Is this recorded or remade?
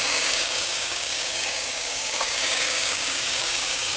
remade